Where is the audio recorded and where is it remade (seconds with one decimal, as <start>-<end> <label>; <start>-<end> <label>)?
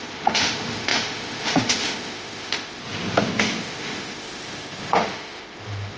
0.0-2.8 remade; 2.8-3.6 recorded; 3.6-6.0 remade